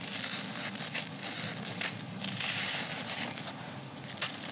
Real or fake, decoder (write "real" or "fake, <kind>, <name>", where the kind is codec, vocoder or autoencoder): real